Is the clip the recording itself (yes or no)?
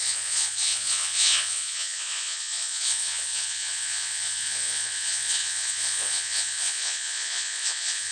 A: no